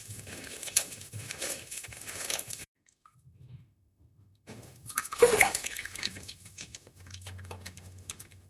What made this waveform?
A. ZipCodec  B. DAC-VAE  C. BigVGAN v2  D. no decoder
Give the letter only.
B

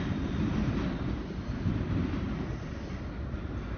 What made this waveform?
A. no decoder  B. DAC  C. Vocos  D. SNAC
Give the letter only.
A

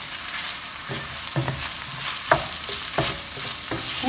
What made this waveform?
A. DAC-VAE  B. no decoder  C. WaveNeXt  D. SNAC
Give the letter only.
B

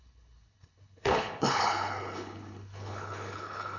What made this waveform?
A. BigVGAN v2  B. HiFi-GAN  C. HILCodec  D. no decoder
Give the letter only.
C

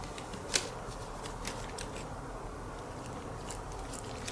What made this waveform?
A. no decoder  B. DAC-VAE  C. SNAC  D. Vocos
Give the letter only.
A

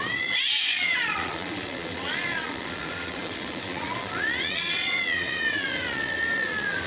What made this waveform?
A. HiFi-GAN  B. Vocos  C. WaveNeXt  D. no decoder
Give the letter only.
C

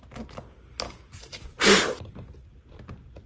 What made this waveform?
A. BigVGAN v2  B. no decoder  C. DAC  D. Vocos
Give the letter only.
B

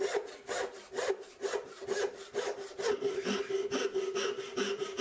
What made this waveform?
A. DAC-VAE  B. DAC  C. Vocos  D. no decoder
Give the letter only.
D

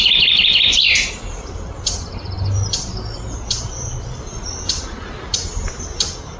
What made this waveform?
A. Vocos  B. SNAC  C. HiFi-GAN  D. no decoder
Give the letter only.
D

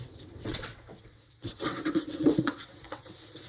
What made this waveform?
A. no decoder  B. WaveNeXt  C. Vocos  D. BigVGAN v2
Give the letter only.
B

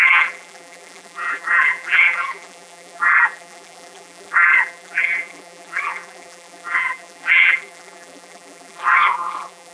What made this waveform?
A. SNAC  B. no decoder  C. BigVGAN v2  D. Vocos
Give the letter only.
C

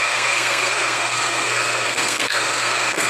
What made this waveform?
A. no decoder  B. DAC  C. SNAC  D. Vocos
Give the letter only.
C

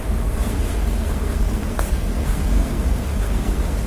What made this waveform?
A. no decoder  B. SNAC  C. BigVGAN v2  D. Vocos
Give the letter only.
B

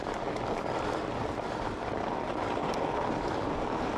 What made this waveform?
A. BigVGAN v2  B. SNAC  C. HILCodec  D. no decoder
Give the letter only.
A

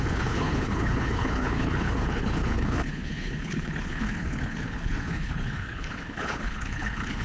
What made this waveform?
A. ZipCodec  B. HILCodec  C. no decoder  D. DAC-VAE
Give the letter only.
B